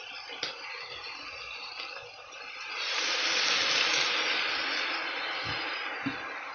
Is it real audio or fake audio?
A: real